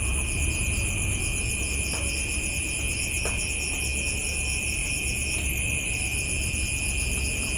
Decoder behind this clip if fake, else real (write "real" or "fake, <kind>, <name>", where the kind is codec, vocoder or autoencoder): real